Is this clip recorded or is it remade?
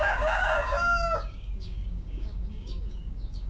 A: remade